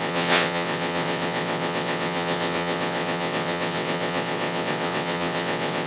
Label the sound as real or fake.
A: fake